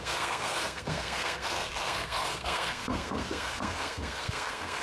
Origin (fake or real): fake